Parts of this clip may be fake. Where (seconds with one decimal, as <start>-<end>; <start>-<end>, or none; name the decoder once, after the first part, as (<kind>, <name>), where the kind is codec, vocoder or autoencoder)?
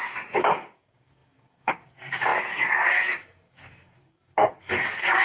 0.0-5.2 (codec, DAC)